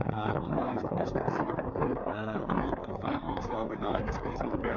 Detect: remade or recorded remade